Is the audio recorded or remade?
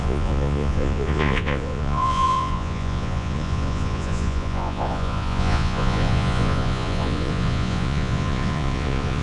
remade